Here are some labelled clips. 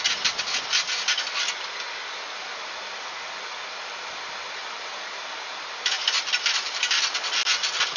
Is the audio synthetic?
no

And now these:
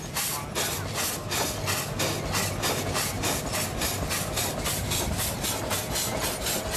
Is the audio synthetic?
no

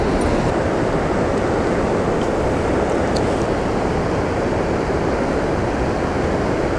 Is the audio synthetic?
no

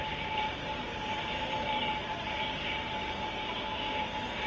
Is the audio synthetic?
yes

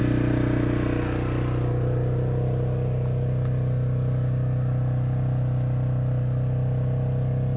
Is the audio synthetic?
no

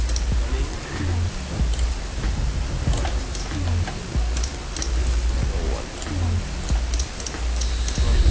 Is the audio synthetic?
no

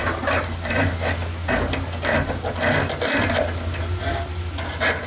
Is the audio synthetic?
no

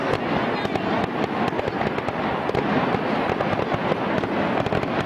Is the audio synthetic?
no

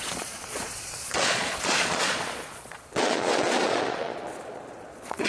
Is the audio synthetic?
yes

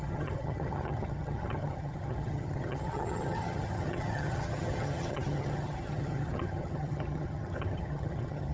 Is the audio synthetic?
yes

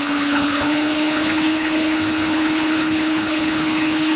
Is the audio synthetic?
yes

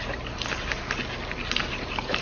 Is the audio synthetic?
no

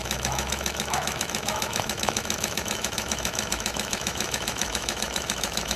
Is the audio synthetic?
yes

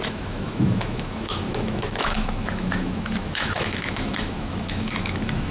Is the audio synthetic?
yes